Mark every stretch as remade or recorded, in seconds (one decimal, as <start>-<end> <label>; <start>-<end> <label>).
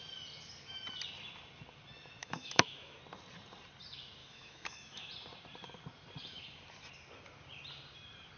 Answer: 0.0-2.2 recorded; 2.2-3.0 remade; 3.0-4.2 recorded; 4.2-5.1 remade; 5.1-8.4 recorded